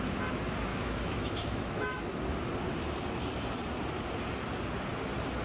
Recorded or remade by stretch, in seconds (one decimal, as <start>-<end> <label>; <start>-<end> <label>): 0.0-0.7 recorded; 0.7-2.0 remade; 2.0-5.4 recorded